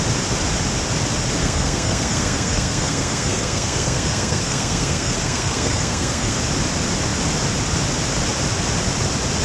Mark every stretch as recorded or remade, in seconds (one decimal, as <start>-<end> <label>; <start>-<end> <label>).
0.0-1.4 recorded; 1.4-6.4 remade; 6.4-9.4 recorded